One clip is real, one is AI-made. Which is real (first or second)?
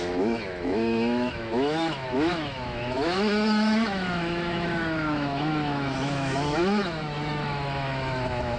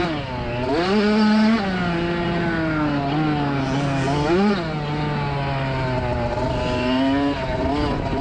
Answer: second